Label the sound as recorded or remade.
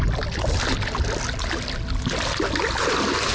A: recorded